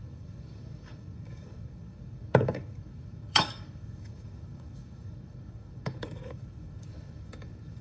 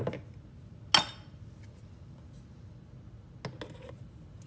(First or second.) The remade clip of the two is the first